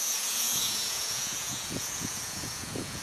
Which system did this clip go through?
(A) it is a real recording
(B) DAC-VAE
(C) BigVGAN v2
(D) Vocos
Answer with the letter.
D